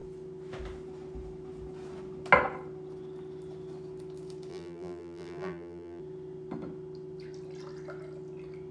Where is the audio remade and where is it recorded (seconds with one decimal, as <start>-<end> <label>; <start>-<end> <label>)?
0.0-4.5 recorded; 4.5-6.0 remade; 6.0-8.7 recorded